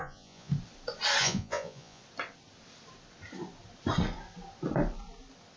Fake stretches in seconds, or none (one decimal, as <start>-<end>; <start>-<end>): 0.0-0.5; 1.2-2.0